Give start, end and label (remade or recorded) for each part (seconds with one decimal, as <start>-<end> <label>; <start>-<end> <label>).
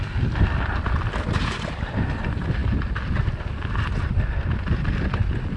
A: 0.0-5.6 recorded